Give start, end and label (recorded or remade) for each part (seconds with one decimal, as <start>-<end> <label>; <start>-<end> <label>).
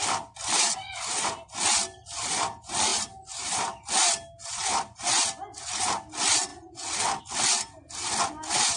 0.0-8.8 recorded